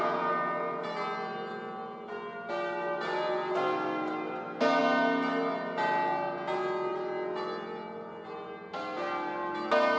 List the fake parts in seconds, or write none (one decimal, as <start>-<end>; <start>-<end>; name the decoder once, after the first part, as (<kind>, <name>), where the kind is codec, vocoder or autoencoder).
none